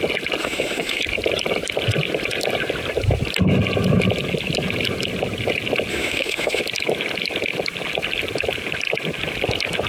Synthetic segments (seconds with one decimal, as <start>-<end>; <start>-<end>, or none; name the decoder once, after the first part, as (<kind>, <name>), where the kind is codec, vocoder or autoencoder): 0.4-1.0 (autoencoder, DAC-VAE); 5.9-6.6